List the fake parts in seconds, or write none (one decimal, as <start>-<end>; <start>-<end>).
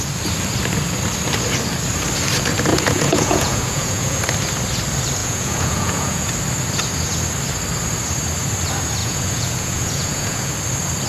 2.7-4.2; 5.2-6.3; 9.0-10.5